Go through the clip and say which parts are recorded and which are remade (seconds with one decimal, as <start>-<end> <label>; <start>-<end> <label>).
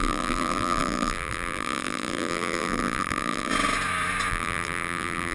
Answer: 0.0-3.5 remade; 3.5-4.3 recorded; 4.3-5.3 remade